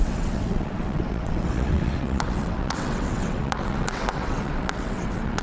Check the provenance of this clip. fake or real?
fake